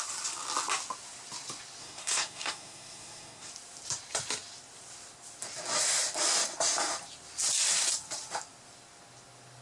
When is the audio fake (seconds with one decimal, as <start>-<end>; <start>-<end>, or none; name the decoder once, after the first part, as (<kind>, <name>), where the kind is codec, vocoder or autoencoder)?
1.8-3.5 (codec, SNAC)